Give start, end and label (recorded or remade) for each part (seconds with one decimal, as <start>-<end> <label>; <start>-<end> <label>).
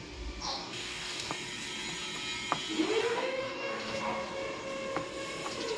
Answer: 0.0-0.6 recorded; 0.6-1.3 remade; 1.3-3.0 recorded; 3.0-4.0 remade; 4.0-5.8 recorded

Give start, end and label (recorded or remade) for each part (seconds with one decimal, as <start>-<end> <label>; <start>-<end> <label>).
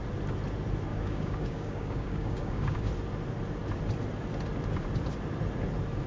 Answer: 0.0-0.9 recorded; 0.9-2.9 remade; 2.9-6.1 recorded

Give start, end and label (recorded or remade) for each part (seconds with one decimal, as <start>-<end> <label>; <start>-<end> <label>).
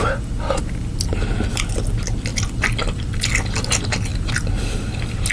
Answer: 0.0-5.3 recorded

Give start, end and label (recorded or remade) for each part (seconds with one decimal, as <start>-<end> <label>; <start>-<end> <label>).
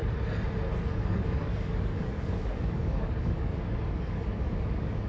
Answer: 0.0-0.9 recorded; 0.9-5.1 remade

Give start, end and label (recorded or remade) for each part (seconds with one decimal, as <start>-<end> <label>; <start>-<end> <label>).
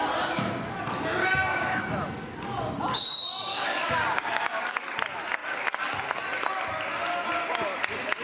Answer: 0.0-1.2 recorded; 1.2-1.9 remade; 1.9-3.5 recorded; 3.5-4.7 remade; 4.7-8.2 recorded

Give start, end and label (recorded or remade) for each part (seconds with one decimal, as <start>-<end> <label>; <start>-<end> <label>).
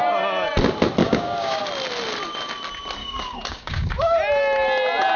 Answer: 0.0-1.0 recorded; 1.0-1.6 remade; 1.6-3.0 recorded; 3.0-3.9 remade; 3.9-5.2 recorded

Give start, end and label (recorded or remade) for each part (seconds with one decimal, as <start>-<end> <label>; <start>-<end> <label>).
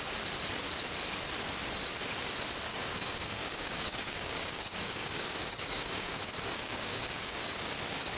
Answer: 0.0-2.7 recorded; 2.7-7.6 remade; 7.6-8.2 recorded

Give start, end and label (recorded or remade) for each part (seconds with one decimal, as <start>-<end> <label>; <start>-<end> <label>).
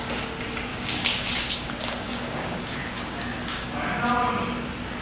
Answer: 0.0-0.7 recorded; 0.7-3.7 remade; 3.7-5.0 recorded